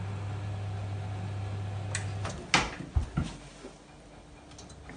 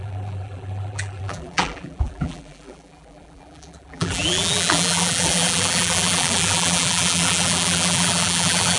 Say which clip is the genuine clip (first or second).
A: first